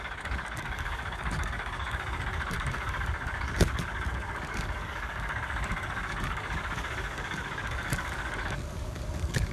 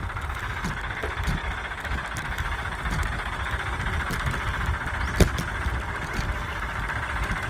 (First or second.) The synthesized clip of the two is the first